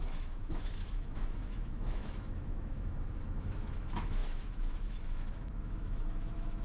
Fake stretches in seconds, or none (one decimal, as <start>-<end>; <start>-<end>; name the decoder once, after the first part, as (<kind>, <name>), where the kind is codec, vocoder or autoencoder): 0.0-6.6 (autoencoder, DAC-VAE)